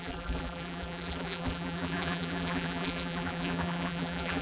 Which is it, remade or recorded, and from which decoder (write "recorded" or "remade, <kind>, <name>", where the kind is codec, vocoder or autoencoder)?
remade, vocoder, BigVGAN v2